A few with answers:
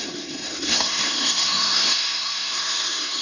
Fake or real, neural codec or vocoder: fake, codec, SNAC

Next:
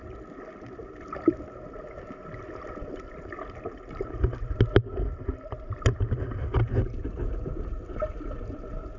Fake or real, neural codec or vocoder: real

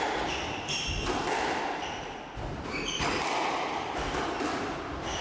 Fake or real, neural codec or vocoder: real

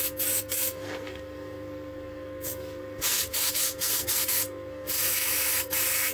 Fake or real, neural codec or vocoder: fake, codec, SNAC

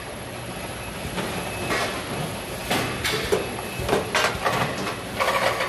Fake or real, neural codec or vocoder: real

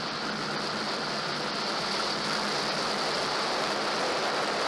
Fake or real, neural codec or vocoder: real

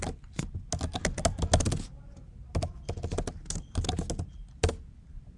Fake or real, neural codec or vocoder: real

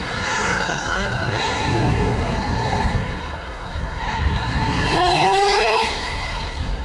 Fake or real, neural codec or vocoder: fake, codec, SNAC